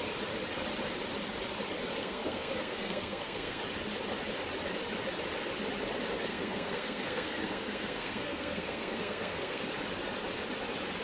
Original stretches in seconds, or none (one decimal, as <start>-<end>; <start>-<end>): 0.0-2.0; 3.6-6.3; 9.6-11.0